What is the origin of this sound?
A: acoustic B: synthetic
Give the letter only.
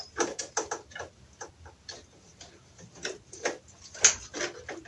A